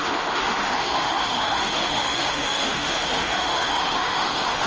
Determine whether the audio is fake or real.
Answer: fake